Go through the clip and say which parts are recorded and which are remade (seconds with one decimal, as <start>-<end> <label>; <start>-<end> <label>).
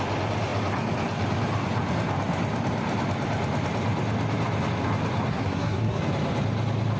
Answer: 0.0-5.3 recorded; 5.3-6.0 remade; 6.0-7.0 recorded